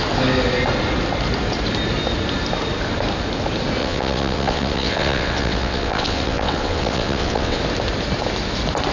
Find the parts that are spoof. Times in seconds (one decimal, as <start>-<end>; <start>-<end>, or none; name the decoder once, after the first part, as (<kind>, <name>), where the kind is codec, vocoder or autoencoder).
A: 3.8-7.6 (vocoder, WaveNeXt)